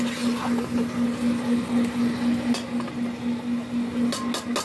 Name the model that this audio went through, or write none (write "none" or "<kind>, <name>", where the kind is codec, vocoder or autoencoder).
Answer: none